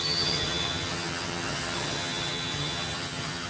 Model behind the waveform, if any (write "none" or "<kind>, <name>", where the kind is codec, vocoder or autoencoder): vocoder, HiFi-GAN